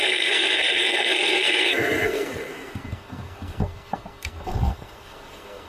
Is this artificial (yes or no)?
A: yes